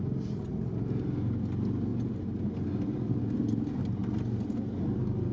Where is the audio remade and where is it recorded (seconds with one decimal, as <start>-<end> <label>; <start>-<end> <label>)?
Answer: 0.0-5.3 recorded